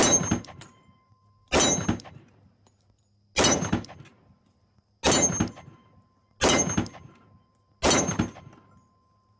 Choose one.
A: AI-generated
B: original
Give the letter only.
B